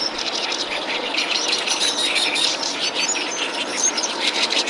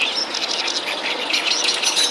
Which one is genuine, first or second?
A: second